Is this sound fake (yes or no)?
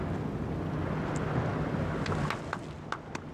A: no